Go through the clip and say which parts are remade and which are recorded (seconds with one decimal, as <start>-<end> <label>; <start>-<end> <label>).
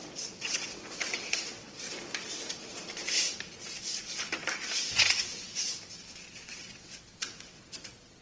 0.0-1.9 remade; 1.9-4.8 recorded; 4.8-5.7 remade; 5.7-6.3 recorded; 6.3-8.2 remade